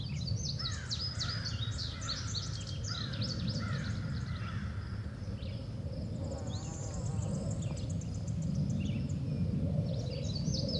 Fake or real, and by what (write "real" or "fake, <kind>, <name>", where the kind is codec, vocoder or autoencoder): real